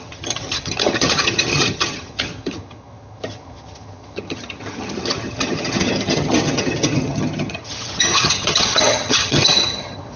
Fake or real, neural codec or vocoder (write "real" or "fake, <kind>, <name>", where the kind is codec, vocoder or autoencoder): fake, vocoder, HiFi-GAN